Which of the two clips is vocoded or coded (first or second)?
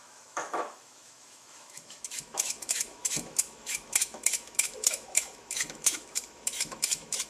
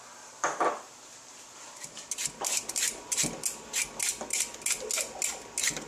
first